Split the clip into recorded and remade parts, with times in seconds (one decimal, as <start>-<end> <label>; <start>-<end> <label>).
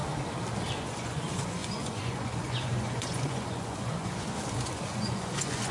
0.0-0.8 recorded; 0.8-5.7 remade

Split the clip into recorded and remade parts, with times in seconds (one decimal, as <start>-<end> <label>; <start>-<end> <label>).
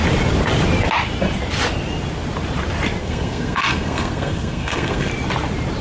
0.0-3.0 recorded; 3.0-5.1 remade; 5.1-5.8 recorded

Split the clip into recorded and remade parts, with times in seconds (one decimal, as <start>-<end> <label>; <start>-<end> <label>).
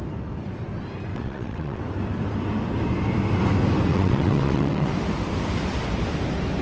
0.0-1.1 recorded; 1.1-1.8 remade; 1.8-3.9 recorded; 3.9-4.9 remade; 4.9-6.6 recorded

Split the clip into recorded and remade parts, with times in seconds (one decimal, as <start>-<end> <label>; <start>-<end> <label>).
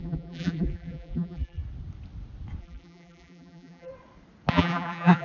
0.0-1.6 remade; 1.6-2.6 recorded; 2.6-3.9 remade; 3.9-4.5 recorded; 4.5-5.2 remade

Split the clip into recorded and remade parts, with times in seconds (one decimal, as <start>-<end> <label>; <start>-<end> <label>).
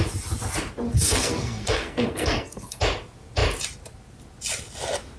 0.0-0.9 recorded; 0.9-2.8 remade; 2.8-5.2 recorded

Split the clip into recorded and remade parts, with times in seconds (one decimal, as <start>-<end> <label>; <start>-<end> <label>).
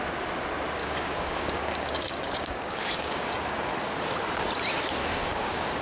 0.0-0.8 recorded; 0.8-3.7 remade; 3.7-5.0 recorded; 5.0-5.8 remade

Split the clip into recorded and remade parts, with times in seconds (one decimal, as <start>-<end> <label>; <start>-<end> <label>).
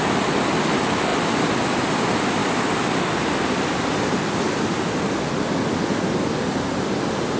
0.0-7.4 recorded